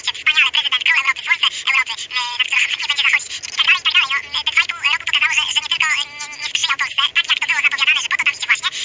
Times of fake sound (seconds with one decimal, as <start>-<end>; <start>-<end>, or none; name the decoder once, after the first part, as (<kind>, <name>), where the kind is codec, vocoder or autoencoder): none